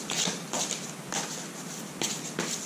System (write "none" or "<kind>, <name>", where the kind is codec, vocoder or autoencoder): none